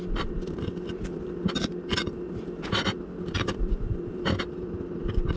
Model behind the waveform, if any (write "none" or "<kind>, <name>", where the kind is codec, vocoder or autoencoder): vocoder, BigVGAN v2